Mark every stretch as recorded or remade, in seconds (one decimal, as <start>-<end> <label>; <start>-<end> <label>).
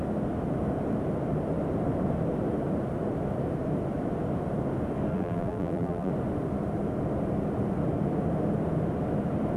0.0-5.1 recorded; 5.1-6.1 remade; 6.1-9.6 recorded